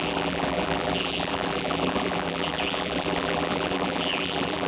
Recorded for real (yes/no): no